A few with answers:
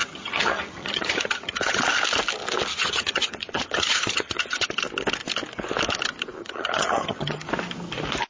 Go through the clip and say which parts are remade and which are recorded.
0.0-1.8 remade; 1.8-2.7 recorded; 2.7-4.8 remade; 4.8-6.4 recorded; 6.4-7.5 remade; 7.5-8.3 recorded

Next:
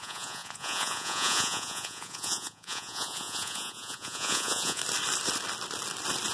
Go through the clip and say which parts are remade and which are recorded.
0.0-4.8 remade; 4.8-6.3 recorded